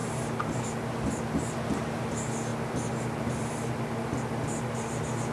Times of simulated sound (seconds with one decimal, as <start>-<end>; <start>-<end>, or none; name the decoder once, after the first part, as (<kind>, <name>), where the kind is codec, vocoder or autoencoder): none